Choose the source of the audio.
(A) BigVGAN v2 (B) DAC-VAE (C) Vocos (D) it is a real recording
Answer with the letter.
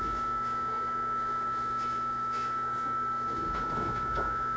B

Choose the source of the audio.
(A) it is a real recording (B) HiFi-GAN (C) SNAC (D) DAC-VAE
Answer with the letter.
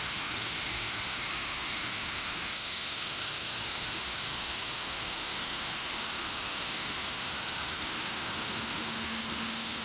D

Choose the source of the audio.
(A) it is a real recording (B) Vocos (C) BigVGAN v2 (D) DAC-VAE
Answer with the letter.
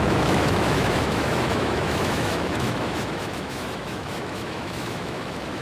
D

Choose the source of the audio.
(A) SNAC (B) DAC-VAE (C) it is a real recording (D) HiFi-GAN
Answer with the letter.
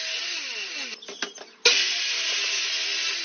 C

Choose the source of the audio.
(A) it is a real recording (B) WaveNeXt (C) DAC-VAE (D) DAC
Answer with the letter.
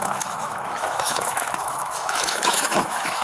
C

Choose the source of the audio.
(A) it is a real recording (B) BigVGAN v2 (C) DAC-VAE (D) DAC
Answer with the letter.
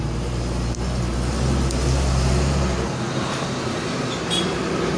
A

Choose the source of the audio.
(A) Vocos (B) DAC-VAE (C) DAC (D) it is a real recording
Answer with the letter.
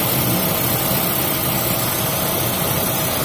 D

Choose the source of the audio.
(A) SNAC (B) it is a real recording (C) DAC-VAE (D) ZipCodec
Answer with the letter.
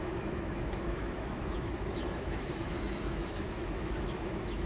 C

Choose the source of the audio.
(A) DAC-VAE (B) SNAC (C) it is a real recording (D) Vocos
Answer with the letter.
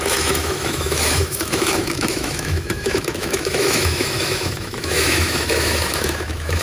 A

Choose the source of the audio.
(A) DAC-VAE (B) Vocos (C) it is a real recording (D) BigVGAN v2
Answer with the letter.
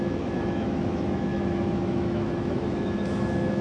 A